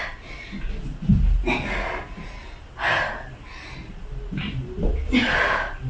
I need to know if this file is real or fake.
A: real